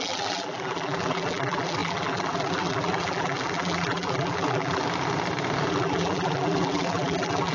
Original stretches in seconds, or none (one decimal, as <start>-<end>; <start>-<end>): 4.8-5.7